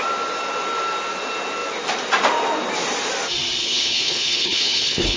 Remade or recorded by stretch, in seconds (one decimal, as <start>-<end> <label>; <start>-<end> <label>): 0.0-3.6 recorded; 3.6-5.2 remade